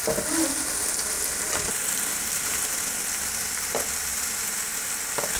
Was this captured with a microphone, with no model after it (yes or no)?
yes